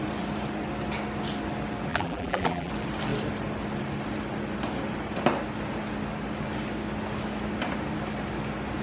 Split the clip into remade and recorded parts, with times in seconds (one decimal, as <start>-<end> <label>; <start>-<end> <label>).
0.0-1.9 recorded; 1.9-2.7 remade; 2.7-8.8 recorded